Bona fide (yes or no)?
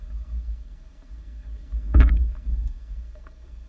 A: no